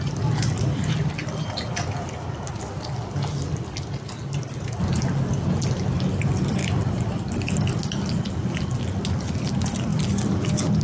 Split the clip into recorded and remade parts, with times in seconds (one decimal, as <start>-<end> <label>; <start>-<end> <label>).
0.0-10.8 recorded